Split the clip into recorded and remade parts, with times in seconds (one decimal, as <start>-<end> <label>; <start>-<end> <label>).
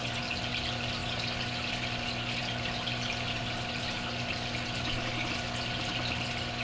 0.0-6.6 recorded